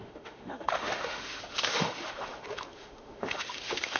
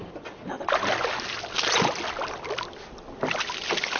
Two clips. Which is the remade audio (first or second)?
first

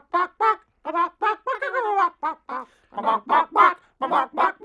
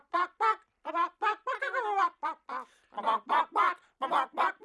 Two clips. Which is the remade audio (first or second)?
second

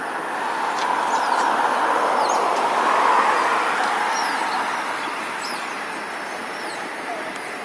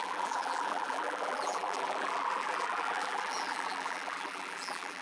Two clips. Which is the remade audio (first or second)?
second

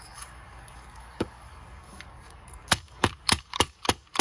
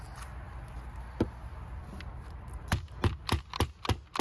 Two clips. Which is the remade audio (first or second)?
first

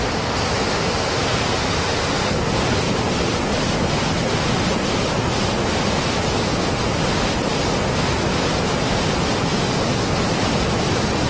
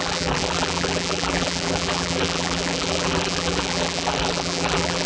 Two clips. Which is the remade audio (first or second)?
second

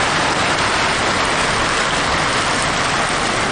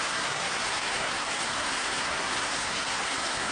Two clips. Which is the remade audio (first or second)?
second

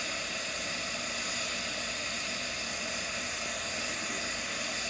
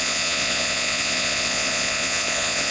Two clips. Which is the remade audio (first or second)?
second